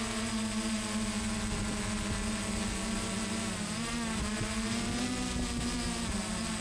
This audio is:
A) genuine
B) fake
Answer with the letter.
A